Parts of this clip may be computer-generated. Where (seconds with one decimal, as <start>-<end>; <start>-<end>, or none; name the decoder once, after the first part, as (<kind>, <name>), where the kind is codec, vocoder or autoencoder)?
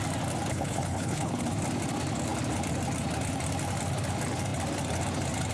0.5-1.4 (codec, HILCodec)